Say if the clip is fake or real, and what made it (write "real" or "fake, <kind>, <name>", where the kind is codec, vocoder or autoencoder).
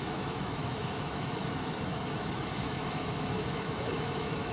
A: fake, autoencoder, DAC-VAE